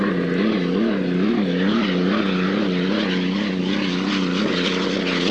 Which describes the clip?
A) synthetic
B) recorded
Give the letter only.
B